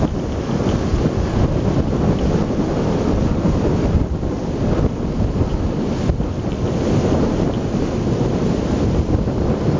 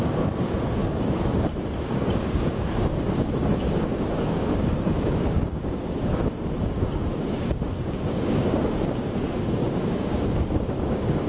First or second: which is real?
first